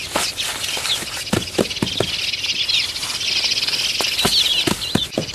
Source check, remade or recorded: recorded